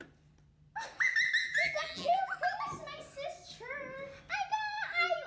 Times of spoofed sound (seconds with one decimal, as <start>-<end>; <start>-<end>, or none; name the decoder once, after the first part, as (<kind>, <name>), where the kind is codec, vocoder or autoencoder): 1.4-2.3 (vocoder, BigVGAN v2)